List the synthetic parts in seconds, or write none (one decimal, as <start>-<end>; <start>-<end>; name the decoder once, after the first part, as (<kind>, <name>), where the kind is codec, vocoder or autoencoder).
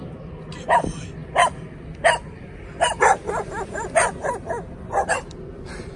0.0-6.0 (vocoder, BigVGAN v2)